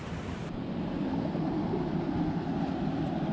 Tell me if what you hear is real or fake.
real